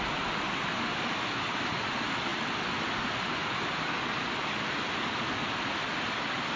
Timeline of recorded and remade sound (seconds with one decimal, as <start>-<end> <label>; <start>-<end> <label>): 0.0-6.6 recorded